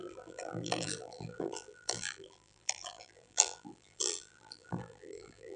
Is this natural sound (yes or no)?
no